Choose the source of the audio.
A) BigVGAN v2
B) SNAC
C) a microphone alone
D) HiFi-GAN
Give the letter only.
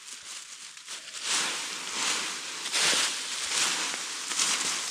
C